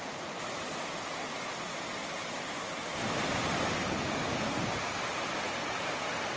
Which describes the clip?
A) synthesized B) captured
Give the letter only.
B